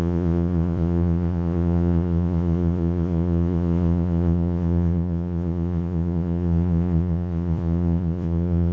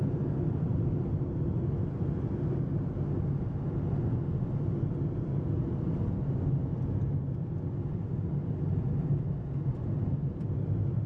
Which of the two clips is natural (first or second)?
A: second